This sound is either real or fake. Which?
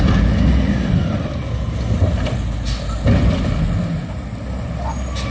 real